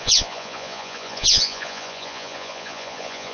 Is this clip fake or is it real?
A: fake